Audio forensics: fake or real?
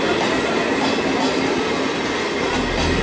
real